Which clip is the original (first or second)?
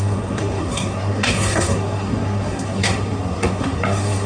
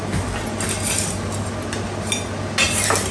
second